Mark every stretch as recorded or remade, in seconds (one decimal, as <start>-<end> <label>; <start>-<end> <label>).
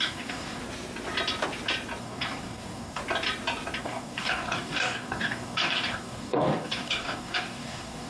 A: 0.0-0.6 remade; 0.6-2.0 recorded; 2.0-3.0 remade; 3.0-3.8 recorded; 3.8-8.1 remade